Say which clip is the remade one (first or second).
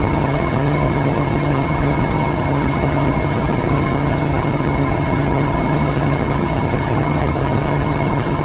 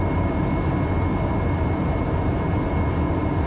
first